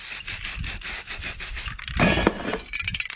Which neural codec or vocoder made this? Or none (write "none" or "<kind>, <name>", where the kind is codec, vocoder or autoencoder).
none